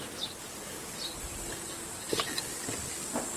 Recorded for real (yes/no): yes